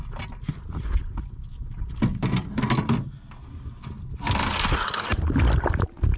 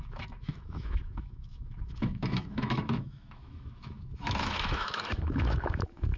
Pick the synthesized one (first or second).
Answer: second